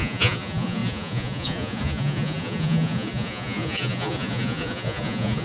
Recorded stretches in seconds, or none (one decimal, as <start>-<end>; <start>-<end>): none